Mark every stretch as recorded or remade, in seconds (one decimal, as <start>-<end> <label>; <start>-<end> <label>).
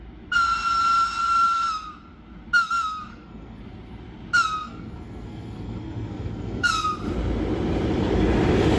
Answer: 0.0-3.1 recorded; 3.1-3.6 remade; 3.6-4.6 recorded; 4.6-6.7 remade; 6.7-8.8 recorded